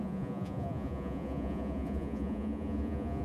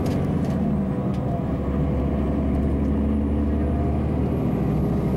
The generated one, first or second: first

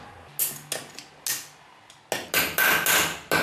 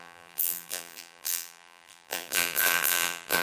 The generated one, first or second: second